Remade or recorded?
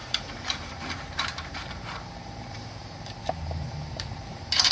remade